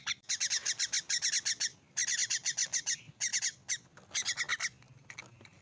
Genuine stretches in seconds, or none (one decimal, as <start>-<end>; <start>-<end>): 0.0-5.6